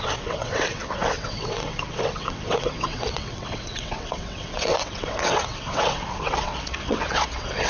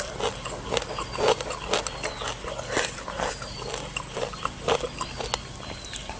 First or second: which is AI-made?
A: first